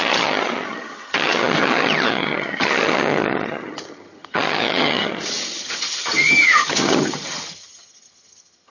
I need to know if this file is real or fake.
fake